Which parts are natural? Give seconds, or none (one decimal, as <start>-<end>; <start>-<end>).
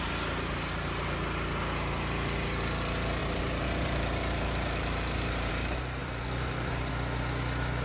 0.0-3.2; 5.5-6.0; 6.9-7.8